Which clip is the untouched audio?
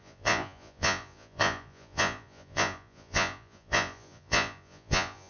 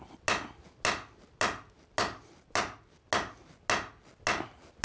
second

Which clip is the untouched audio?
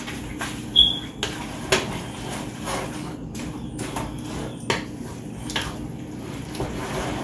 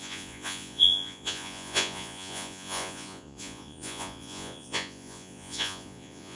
first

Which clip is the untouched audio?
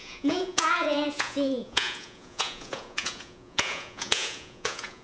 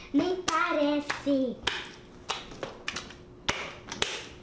second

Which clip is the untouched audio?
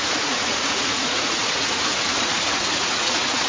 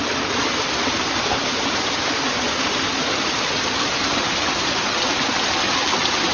second